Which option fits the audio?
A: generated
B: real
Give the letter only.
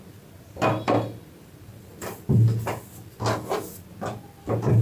B